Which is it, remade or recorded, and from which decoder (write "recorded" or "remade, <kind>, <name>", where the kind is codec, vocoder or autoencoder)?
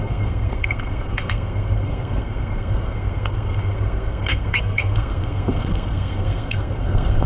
remade, codec, SNAC